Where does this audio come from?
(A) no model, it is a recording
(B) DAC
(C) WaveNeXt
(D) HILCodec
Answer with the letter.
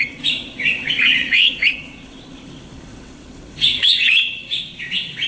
C